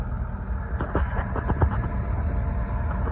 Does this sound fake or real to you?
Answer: real